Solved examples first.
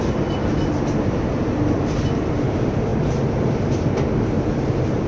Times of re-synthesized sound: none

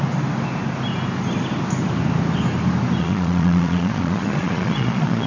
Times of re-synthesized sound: 3.0-5.3 (vocoder, Vocos)